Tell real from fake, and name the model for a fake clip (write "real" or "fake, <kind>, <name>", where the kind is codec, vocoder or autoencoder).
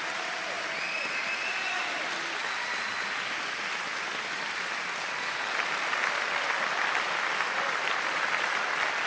real